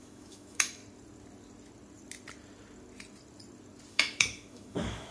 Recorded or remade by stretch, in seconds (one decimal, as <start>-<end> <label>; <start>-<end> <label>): 0.0-0.8 remade; 0.8-3.9 recorded; 3.9-5.1 remade